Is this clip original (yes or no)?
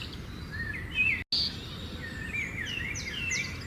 yes